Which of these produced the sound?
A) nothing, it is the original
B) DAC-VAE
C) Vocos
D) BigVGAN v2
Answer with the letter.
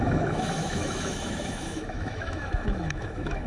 B